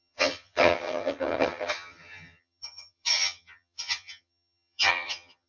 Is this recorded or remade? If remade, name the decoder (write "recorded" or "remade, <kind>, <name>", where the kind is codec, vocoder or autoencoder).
remade, vocoder, HiFi-GAN